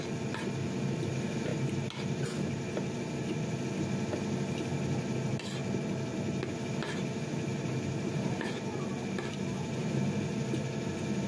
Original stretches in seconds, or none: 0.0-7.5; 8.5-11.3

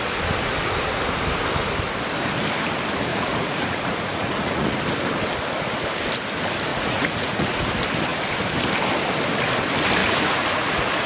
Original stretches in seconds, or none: 0.0-3.1; 4.8-6.7; 7.6-10.0

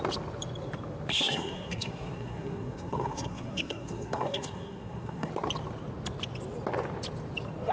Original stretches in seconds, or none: 0.0-1.1; 5.3-7.7

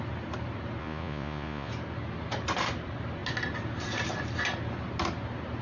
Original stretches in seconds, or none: 0.0-0.8; 1.7-5.6

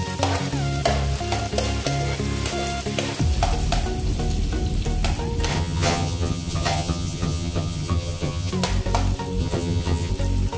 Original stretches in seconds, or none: 0.0-5.5; 8.5-9.4; 10.1-10.6

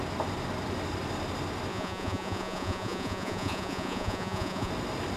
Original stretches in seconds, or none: 0.0-1.7; 4.7-5.2